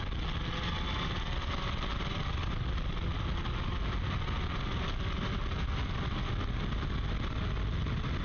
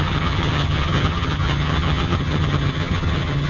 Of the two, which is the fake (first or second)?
second